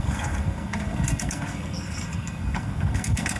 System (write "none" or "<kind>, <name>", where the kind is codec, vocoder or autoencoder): codec, SNAC